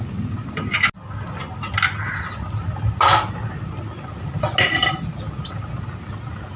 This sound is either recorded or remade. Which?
recorded